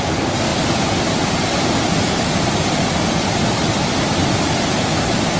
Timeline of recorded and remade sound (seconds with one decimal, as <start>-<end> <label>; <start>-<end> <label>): 0.0-5.4 recorded